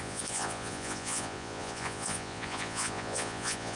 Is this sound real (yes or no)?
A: no